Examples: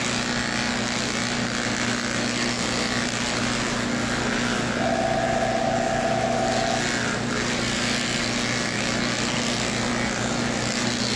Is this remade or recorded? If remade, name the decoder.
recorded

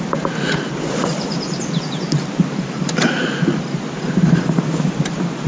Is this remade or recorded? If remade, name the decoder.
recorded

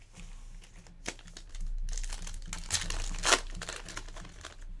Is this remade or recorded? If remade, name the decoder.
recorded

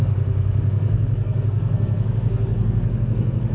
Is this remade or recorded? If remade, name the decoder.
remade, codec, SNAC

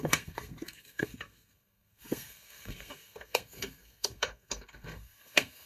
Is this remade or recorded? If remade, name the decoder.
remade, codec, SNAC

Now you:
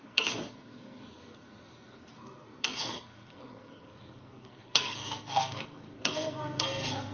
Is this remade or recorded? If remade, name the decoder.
remade, codec, SNAC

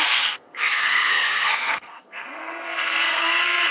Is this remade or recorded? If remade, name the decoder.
remade, codec, SNAC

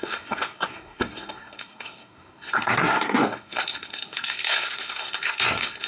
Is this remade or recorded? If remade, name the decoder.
remade, codec, SNAC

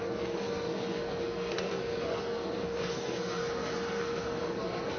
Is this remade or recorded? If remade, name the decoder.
remade, codec, SNAC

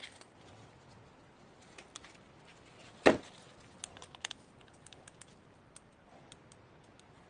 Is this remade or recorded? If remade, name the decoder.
recorded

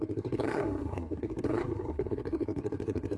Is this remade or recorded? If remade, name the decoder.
remade, codec, SNAC